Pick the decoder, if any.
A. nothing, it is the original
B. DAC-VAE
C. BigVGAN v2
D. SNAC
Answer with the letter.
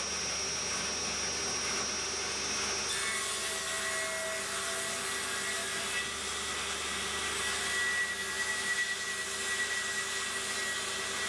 A